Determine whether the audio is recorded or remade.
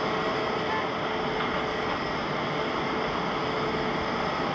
recorded